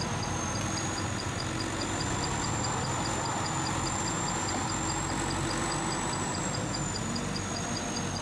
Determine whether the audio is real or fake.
real